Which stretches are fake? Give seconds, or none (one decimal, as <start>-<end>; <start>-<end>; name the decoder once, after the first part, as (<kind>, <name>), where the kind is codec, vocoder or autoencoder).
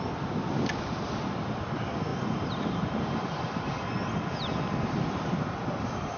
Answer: none